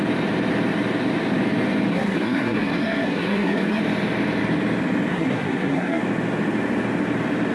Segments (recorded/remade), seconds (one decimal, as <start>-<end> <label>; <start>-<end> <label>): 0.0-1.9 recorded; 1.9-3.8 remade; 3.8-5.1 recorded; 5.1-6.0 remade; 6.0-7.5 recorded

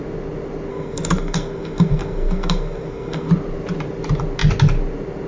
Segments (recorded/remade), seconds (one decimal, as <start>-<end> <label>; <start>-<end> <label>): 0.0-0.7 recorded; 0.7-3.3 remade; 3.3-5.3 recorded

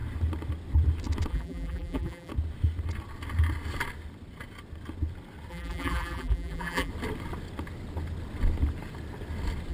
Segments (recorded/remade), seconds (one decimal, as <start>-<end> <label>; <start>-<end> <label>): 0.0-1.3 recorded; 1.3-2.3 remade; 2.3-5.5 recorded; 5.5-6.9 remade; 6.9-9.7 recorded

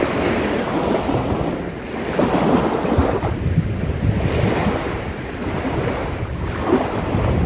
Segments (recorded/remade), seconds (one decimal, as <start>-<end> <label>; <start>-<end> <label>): 0.0-3.0 recorded; 3.0-6.6 remade; 6.6-7.5 recorded